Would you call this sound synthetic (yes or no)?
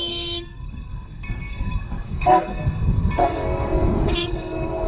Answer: yes